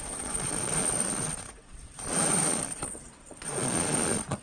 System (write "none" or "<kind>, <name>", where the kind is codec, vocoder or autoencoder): vocoder, Vocos